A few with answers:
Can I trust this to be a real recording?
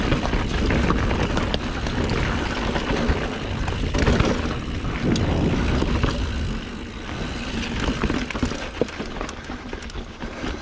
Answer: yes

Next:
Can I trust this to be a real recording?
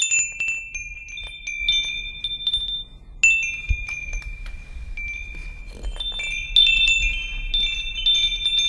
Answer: yes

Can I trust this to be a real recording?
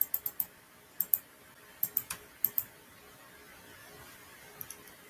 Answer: yes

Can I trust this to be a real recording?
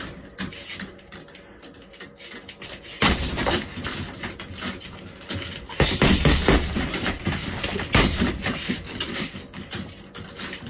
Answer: yes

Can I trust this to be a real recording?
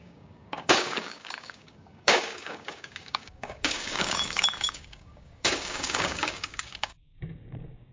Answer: no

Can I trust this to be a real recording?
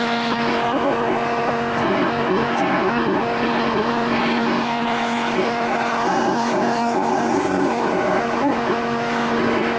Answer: no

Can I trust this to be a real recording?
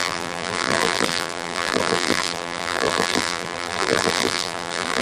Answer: no